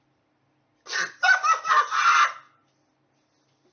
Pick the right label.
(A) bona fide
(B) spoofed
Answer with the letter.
A